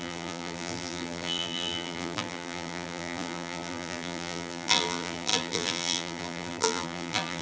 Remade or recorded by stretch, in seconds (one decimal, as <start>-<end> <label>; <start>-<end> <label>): 0.0-7.4 remade